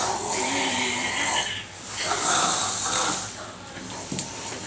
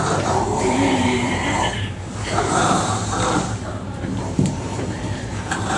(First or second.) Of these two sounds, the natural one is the first